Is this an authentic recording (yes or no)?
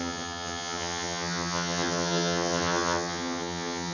no